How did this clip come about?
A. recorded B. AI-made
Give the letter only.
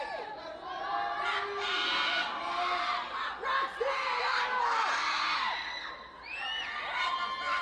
A